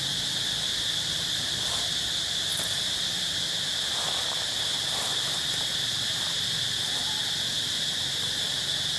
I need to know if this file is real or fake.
real